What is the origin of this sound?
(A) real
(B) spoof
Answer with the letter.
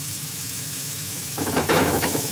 B